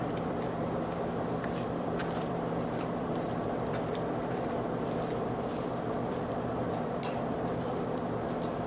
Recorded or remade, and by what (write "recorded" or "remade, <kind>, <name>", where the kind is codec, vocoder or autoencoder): remade, vocoder, BigVGAN v2